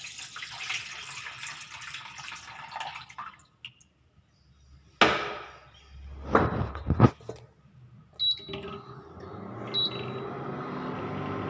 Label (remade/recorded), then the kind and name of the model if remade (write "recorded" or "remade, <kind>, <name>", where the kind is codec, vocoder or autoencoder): recorded